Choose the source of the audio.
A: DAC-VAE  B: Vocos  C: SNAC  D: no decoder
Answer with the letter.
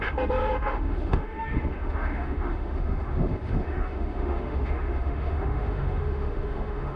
A